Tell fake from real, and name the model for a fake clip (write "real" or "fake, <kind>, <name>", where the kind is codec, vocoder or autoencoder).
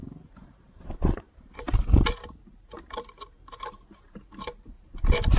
fake, vocoder, BigVGAN v2